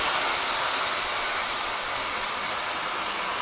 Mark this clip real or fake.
real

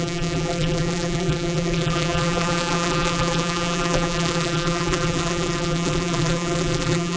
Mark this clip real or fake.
fake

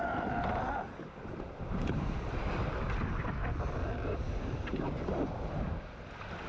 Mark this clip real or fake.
real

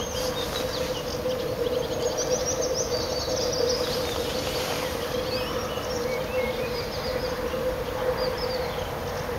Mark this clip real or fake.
real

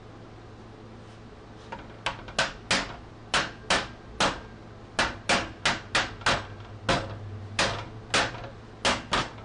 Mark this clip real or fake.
real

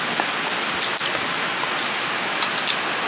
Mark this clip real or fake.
real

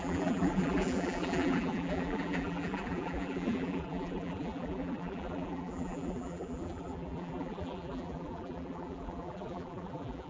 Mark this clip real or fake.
fake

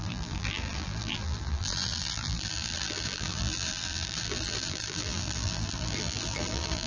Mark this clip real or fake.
fake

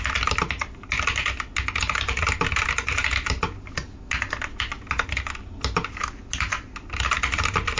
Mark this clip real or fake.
real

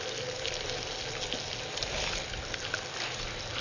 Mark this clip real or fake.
real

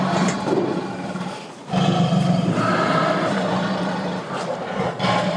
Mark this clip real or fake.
fake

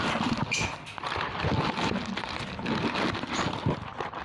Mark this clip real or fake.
real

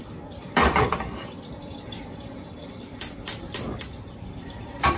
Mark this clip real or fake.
fake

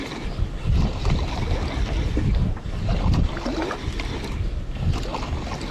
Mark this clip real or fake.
real